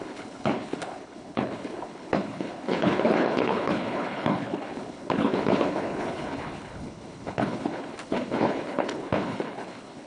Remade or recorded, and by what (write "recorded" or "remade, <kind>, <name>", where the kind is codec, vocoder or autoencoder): remade, codec, HILCodec